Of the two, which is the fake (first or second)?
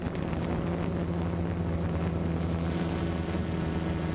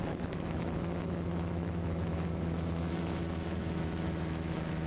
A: second